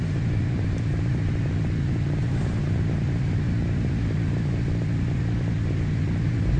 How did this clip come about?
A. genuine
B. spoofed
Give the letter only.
A